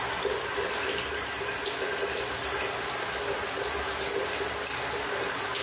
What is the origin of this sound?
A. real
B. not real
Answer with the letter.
A